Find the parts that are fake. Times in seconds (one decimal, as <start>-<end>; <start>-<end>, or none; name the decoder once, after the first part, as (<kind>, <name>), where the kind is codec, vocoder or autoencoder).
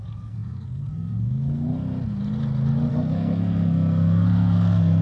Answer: 0.0-1.7 (codec, SNAC); 2.9-5.0